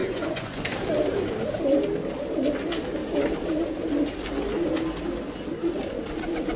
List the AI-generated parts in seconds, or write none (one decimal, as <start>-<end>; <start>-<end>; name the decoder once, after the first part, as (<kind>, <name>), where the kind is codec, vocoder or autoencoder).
0.0-0.6 (vocoder, Vocos)